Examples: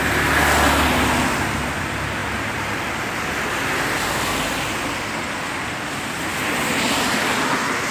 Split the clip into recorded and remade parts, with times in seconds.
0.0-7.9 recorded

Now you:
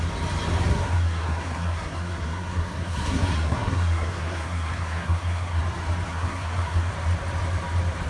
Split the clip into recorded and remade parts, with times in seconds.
0.0-0.7 recorded; 0.7-5.6 remade; 5.6-6.1 recorded; 6.1-6.9 remade; 6.9-8.1 recorded